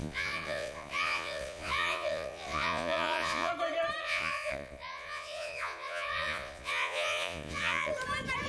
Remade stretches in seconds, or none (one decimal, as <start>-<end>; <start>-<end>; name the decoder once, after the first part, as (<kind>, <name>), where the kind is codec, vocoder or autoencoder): 0.0-3.5 (vocoder, Vocos); 4.0-7.9